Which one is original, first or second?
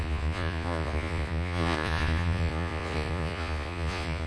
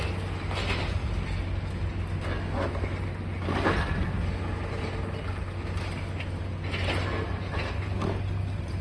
second